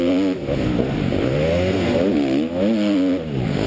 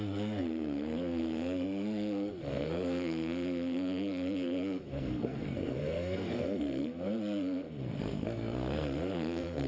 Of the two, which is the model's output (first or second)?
second